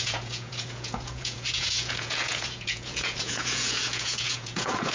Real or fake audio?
fake